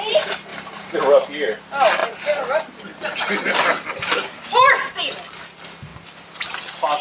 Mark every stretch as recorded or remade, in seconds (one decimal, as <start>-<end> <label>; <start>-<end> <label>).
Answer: 0.0-0.5 recorded; 0.5-1.0 remade; 1.0-7.0 recorded